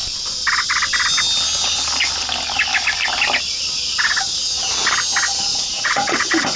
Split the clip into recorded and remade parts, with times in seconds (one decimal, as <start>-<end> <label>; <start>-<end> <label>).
0.0-5.5 recorded; 5.5-6.6 remade